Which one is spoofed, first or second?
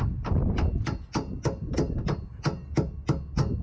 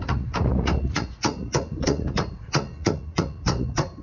second